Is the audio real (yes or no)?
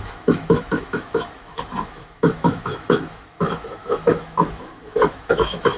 no